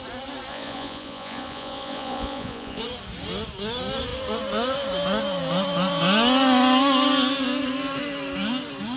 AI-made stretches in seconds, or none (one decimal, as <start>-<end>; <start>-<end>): 0.5-2.8

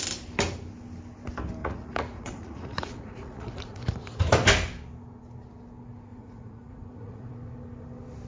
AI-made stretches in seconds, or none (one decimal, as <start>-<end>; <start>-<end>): 1.6-3.8; 6.1-7.3

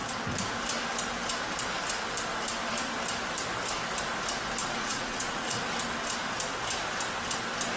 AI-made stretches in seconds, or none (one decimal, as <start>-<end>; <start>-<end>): 4.6-5.6

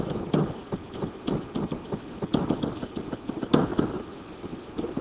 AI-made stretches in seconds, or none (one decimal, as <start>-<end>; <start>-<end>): none